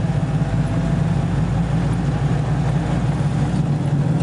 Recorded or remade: recorded